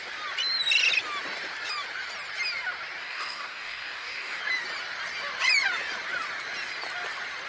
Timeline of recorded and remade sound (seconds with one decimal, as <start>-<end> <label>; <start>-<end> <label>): 0.0-3.0 recorded; 3.0-4.4 remade; 4.4-7.5 recorded

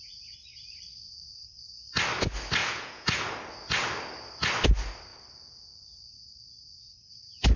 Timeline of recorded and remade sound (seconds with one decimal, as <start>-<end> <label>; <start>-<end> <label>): 0.0-2.6 recorded; 2.6-3.2 remade; 3.2-7.6 recorded

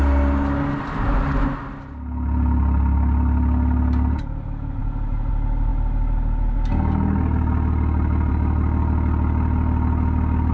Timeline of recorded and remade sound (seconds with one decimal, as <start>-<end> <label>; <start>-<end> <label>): 0.0-10.5 recorded

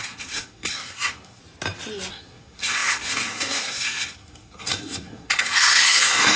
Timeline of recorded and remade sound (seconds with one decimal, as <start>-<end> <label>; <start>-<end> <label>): 0.0-1.4 remade; 1.4-2.1 recorded; 2.1-6.4 remade